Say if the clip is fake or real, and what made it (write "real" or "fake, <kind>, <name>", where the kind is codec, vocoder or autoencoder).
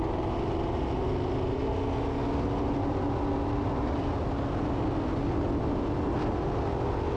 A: real